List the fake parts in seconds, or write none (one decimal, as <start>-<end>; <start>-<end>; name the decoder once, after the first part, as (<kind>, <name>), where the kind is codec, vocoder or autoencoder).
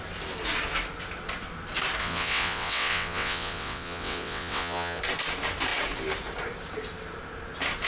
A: 2.0-5.0 (vocoder, WaveNeXt)